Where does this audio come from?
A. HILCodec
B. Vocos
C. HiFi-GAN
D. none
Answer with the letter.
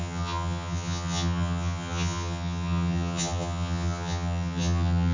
C